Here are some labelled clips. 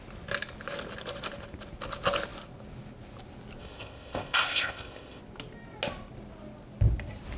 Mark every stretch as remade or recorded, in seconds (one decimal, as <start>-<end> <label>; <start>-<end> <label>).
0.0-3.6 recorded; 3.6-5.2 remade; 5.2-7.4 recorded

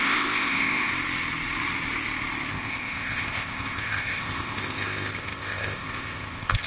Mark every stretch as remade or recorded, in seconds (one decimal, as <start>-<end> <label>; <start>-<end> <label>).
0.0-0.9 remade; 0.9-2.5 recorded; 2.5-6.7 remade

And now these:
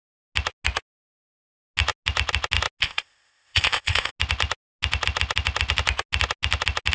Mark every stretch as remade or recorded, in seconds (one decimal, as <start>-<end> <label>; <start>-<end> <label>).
0.0-2.8 recorded; 2.8-4.1 remade; 4.1-6.9 recorded